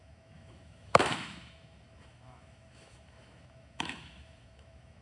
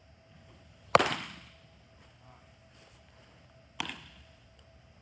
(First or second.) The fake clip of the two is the first